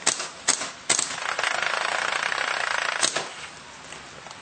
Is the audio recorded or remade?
recorded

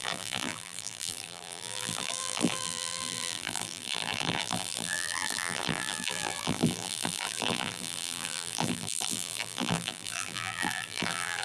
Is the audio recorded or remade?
remade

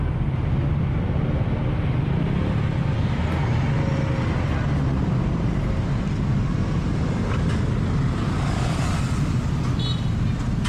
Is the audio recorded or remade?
recorded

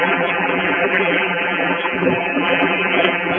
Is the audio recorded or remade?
remade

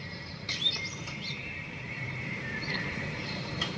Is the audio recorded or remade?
remade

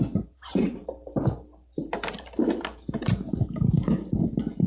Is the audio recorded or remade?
remade